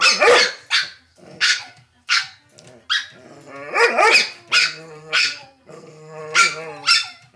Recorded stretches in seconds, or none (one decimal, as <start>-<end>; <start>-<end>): 0.0-1.1; 2.4-4.6; 6.2-7.4